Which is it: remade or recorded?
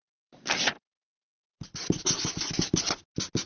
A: recorded